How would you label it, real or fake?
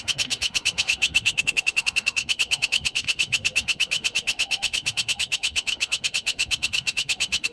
fake